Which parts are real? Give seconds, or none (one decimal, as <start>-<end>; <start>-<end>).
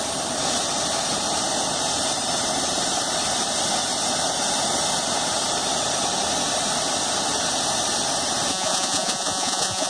0.0-8.5